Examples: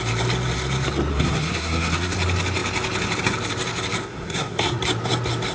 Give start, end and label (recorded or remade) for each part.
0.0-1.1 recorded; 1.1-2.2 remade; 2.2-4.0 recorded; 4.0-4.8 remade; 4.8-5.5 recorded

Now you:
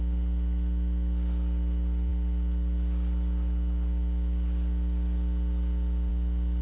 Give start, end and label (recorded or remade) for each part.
0.0-6.6 recorded

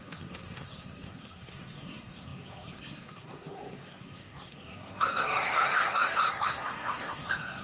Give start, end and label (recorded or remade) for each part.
0.0-7.6 remade

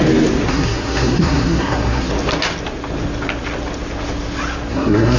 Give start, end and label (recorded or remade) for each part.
0.0-0.5 recorded; 0.5-2.1 remade; 2.1-4.7 recorded; 4.7-5.2 remade

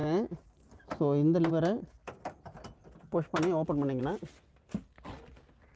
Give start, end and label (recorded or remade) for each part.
0.0-5.8 recorded

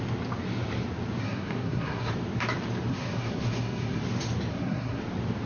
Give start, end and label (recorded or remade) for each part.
0.0-1.2 recorded; 1.2-2.1 remade; 2.1-2.9 recorded; 2.9-4.0 remade; 4.0-4.5 recorded; 4.5-5.0 remade; 5.0-5.5 recorded

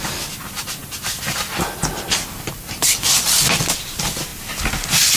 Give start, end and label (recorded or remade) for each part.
0.0-5.2 recorded

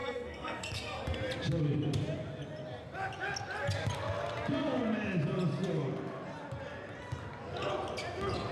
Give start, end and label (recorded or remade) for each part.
0.0-1.0 remade; 1.0-8.5 recorded